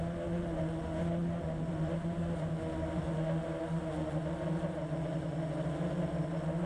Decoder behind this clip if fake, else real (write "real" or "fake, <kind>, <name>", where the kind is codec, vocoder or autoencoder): real